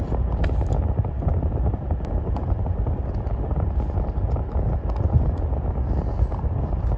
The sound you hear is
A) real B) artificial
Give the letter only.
A